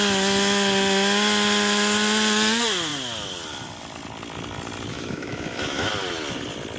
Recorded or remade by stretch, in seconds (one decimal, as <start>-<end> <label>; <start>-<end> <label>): 0.0-4.9 recorded; 4.9-5.9 remade; 5.9-6.8 recorded